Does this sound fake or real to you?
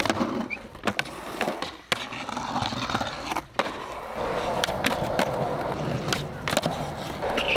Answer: real